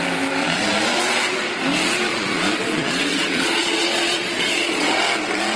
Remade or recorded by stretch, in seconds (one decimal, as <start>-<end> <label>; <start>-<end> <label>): 0.0-0.4 recorded; 0.4-1.0 remade; 1.0-2.1 recorded; 2.1-5.0 remade; 5.0-5.6 recorded